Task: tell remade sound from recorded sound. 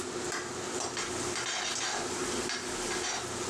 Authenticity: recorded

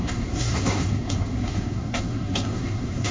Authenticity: remade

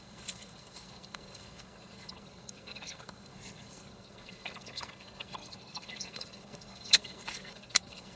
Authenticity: remade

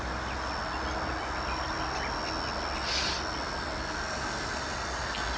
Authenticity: recorded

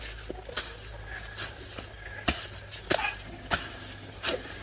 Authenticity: recorded